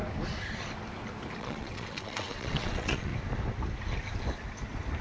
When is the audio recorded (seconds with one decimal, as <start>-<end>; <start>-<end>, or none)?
0.0-1.4; 3.1-5.0